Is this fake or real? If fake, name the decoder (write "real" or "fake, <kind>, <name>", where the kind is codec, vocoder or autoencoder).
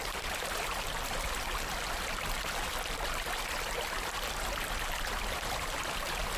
fake, vocoder, BigVGAN v2